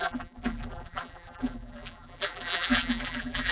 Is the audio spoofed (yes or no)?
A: yes